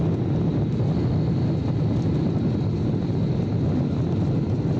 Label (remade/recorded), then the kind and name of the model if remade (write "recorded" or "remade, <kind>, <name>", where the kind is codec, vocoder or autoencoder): recorded